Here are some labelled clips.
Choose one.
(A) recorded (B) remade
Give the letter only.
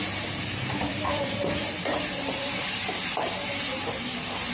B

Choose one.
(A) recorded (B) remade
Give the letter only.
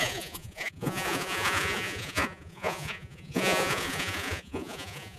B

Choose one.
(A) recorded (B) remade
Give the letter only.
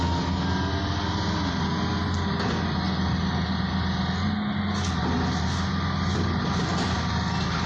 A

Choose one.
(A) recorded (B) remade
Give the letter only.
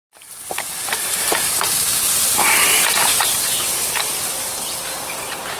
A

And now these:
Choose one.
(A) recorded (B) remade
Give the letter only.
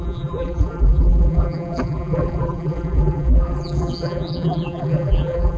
B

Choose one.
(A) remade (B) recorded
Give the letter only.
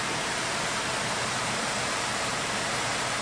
A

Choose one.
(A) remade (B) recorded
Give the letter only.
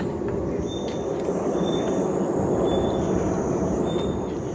B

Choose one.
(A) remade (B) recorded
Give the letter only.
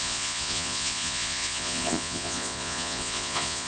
A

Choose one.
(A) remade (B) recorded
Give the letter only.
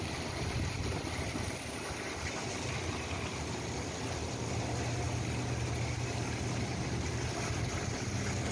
B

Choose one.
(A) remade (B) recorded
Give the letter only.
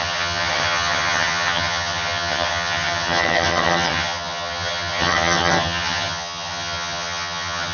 A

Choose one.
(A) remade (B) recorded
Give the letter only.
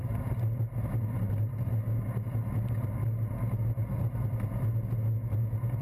B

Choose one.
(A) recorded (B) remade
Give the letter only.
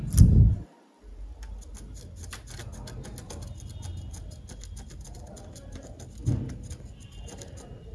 A